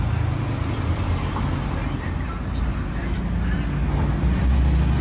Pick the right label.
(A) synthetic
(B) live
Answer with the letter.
B